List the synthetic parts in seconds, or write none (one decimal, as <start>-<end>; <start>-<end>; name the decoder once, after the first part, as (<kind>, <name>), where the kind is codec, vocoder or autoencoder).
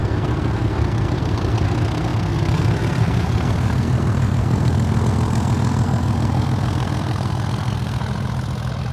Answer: 0.0-8.0 (codec, SNAC)